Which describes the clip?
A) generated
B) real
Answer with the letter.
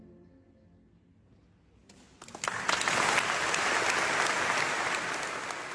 B